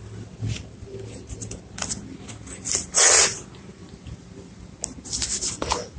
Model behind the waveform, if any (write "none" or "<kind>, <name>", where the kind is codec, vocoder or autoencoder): none